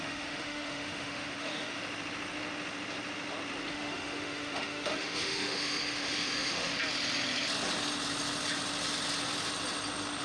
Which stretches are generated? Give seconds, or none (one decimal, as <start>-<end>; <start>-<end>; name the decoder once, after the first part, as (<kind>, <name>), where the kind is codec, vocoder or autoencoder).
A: 0.0-1.8 (autoencoder, DAC-VAE); 3.7-6.7